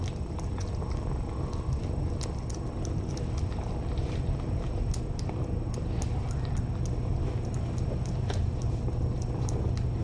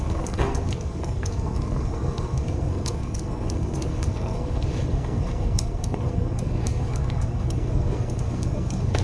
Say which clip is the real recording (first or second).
first